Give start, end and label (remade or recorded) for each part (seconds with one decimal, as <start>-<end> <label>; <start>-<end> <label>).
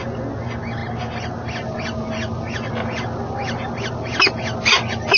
0.0-5.2 recorded